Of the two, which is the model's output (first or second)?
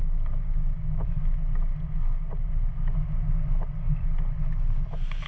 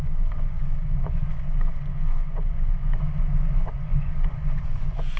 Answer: second